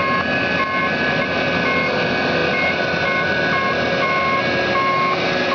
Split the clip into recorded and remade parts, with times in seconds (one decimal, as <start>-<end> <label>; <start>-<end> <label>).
0.0-5.5 recorded